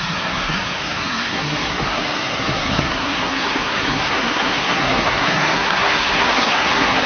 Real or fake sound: fake